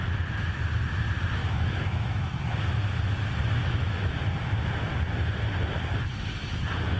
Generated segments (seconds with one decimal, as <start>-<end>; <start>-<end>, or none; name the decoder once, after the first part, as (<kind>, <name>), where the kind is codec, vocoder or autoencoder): 1.4-2.4 (autoencoder, DAC-VAE); 3.6-4.2

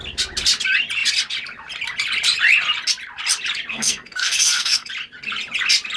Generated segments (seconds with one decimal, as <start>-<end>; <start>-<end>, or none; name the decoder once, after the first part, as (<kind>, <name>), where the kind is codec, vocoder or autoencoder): 3.7-4.9 (codec, SNAC)

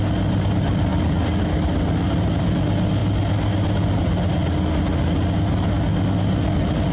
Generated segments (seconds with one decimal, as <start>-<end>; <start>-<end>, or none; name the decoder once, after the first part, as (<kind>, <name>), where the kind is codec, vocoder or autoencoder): none